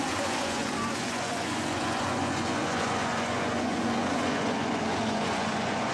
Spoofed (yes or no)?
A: yes